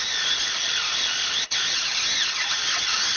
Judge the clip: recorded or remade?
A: recorded